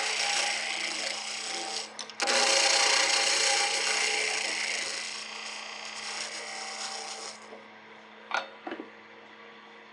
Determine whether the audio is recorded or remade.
recorded